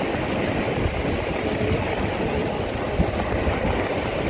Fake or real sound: real